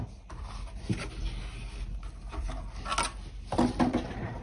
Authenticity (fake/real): real